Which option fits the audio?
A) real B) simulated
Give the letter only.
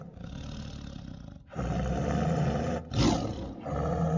A